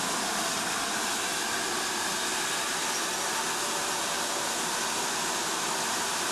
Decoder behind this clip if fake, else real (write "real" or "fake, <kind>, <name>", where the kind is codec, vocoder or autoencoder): real